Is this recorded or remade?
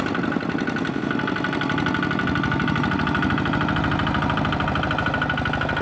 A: recorded